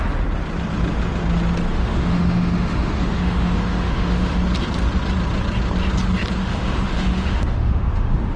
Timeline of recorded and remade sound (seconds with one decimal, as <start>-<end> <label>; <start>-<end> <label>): 0.0-1.7 recorded; 1.7-4.4 remade; 4.4-6.4 recorded; 6.4-8.4 remade